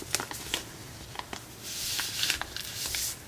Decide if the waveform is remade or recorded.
recorded